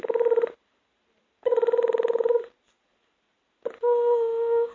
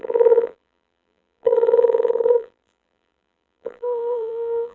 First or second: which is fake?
second